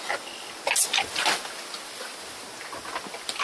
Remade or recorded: recorded